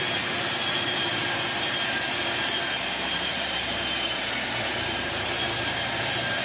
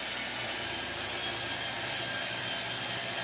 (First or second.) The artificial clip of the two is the first